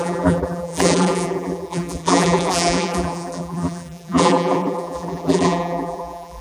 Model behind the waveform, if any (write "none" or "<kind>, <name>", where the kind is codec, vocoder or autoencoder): vocoder, BigVGAN v2